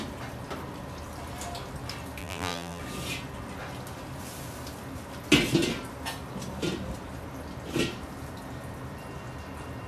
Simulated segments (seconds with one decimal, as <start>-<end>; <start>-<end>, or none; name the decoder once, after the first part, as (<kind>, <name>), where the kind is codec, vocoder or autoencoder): 2.2-2.8 (vocoder, BigVGAN v2)